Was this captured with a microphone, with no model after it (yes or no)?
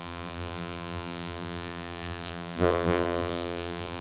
no